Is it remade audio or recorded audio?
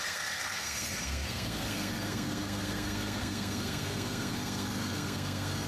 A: remade